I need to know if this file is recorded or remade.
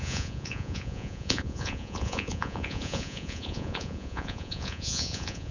remade